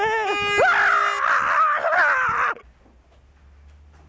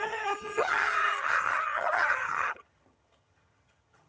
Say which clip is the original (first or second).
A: first